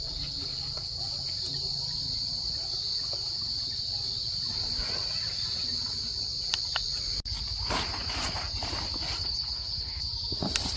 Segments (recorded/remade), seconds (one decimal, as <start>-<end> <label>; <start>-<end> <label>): 0.0-9.2 recorded; 9.2-10.0 remade; 10.0-10.8 recorded